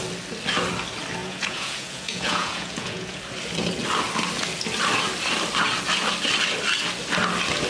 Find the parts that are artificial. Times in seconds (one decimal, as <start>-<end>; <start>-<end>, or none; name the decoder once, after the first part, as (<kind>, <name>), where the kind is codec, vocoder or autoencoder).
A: 1.2-3.2 (vocoder, Vocos)